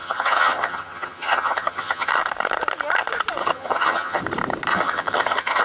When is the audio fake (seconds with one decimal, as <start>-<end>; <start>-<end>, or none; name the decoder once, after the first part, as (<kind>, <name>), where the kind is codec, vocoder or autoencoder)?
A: 0.0-2.1 (vocoder, HiFi-GAN); 3.4-4.2; 4.7-5.6